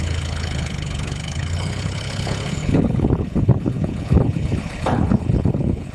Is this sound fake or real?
fake